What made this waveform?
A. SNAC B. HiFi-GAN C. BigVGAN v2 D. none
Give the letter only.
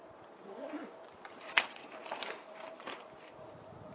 C